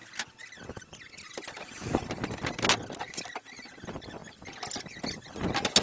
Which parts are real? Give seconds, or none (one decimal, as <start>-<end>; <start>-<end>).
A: 2.0-5.8